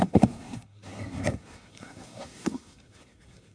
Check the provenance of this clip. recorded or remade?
remade